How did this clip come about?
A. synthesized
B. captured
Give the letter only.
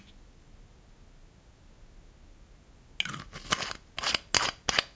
B